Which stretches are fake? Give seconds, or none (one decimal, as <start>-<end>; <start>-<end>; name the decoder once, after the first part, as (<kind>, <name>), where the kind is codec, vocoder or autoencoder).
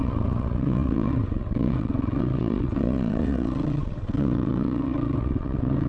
0.0-5.9 (vocoder, WaveNeXt)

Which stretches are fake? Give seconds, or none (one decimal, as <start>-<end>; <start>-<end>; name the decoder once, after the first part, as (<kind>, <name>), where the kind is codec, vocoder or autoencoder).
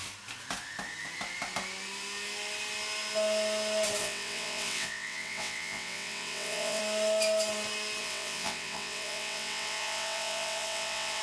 4.0-6.8 (vocoder, WaveNeXt); 8.0-11.2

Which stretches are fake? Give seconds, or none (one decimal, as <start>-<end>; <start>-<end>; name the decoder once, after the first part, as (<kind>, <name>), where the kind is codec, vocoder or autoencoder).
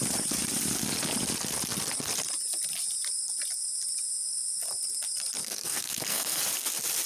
5.4-6.4 (codec, SNAC)